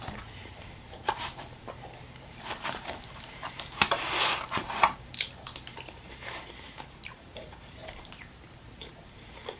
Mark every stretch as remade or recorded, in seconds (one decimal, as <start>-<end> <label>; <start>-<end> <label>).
0.0-9.6 remade